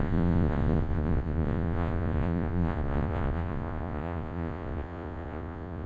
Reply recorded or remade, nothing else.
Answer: remade